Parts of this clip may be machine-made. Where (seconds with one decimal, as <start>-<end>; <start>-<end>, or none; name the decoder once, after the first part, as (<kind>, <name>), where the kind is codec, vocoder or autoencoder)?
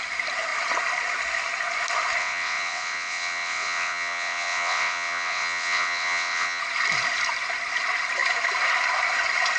2.2-6.6 (vocoder, WaveNeXt)